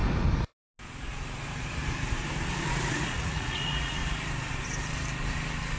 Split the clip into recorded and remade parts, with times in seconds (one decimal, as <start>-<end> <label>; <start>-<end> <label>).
0.0-2.7 recorded; 2.7-4.0 remade; 4.0-5.8 recorded

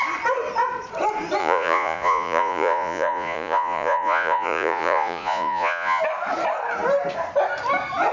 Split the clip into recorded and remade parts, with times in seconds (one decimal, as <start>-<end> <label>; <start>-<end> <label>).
0.0-1.4 recorded; 1.4-6.0 remade; 6.0-8.1 recorded

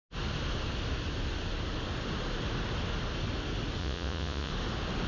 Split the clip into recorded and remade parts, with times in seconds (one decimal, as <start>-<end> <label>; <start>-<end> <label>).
0.0-3.8 recorded; 3.8-4.5 remade; 4.5-5.1 recorded

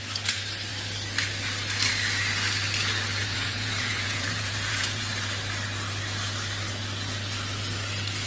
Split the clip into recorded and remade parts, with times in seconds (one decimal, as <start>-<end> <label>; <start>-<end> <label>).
0.0-3.2 recorded; 3.2-5.1 remade; 5.1-8.3 recorded

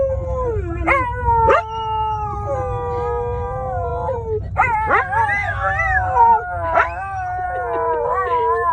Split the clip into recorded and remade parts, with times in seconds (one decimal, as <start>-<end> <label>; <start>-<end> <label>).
0.0-8.7 recorded

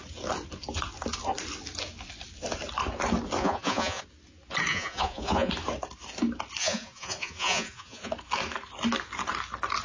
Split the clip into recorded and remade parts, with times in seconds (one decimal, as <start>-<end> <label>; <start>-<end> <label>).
0.0-3.4 recorded; 3.4-4.0 remade; 4.0-4.7 recorded; 4.7-5.5 remade; 5.5-6.6 recorded; 6.6-8.1 remade; 8.1-9.8 recorded

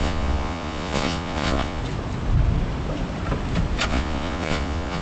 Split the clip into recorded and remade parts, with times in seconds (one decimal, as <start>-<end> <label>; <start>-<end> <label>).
0.0-1.8 remade; 1.8-3.9 recorded; 3.9-5.0 remade

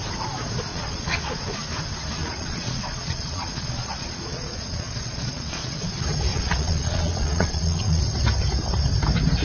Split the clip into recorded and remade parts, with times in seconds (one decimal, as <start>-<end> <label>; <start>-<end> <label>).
0.0-0.7 recorded; 0.7-1.4 remade; 1.4-2.2 recorded; 2.2-5.8 remade; 5.8-6.3 recorded; 6.3-8.0 remade; 8.0-9.4 recorded